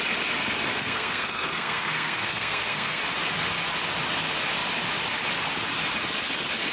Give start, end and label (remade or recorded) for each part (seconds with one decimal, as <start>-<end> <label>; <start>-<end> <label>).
0.0-0.7 recorded; 0.7-3.0 remade; 3.0-6.7 recorded